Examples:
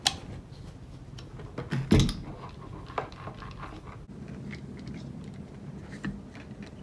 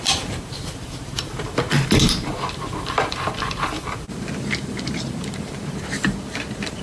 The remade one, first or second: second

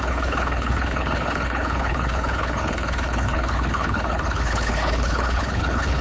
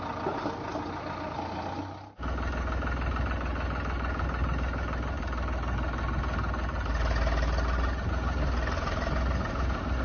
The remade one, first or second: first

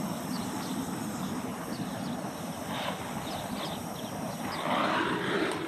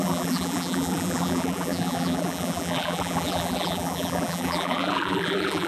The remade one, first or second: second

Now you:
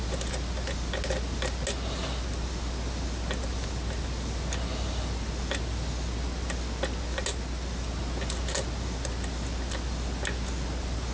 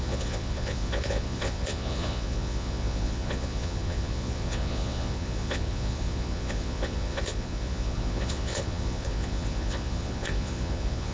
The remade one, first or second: second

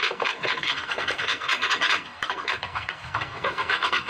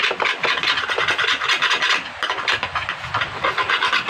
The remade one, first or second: first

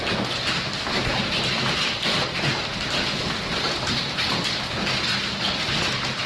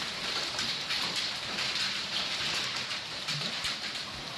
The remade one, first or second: second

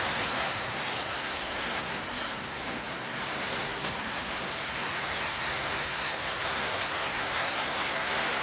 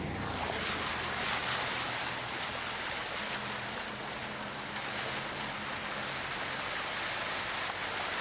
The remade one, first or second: first